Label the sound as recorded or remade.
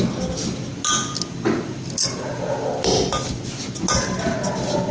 recorded